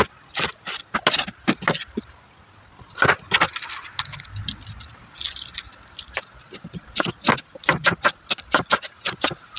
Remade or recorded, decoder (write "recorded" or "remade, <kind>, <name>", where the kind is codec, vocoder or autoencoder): recorded